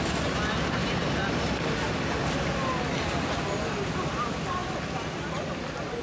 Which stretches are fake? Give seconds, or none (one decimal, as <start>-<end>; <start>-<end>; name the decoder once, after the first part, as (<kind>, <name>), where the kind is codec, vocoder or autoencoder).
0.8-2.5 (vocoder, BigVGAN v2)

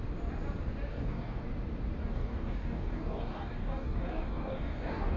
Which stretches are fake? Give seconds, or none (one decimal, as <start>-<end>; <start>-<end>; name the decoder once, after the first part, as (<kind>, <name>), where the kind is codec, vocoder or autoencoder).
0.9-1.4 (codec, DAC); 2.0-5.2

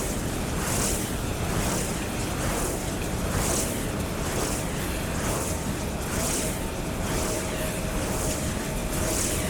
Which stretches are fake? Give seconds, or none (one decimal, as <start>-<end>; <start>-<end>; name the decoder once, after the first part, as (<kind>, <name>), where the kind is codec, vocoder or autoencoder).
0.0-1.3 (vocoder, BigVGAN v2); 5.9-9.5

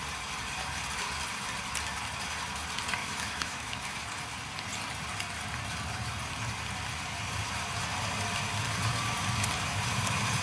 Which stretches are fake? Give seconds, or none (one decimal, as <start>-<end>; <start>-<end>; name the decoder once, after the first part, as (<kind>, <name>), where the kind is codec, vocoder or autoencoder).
3.0-4.0 (autoencoder, DAC-VAE)

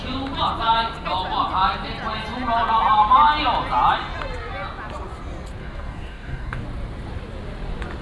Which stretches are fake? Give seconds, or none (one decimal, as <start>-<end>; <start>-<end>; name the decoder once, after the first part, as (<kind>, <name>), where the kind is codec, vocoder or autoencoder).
5.6-6.6 (codec, DAC)

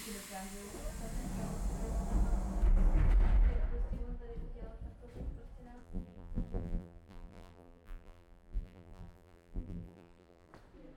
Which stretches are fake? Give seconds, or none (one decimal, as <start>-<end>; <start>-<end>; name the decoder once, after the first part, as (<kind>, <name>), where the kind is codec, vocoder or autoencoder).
5.8-10.5 (vocoder, BigVGAN v2)